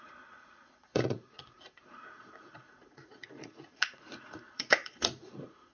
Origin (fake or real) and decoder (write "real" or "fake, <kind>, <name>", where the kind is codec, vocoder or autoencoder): fake, vocoder, Vocos